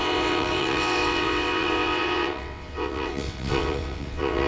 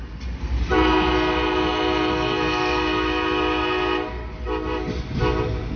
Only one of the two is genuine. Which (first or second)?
second